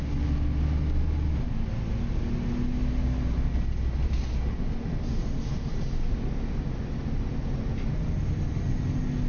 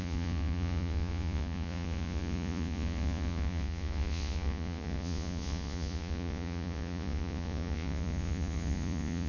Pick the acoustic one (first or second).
first